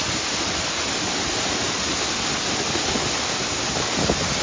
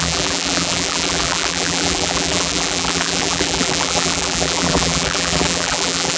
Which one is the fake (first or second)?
second